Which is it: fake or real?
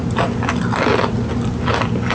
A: real